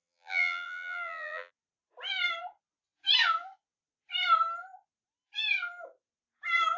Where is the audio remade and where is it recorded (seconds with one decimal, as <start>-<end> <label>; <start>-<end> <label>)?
0.0-1.5 remade; 1.5-6.8 recorded